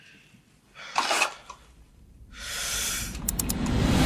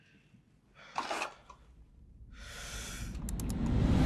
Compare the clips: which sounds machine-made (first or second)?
first